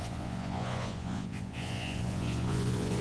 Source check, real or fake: fake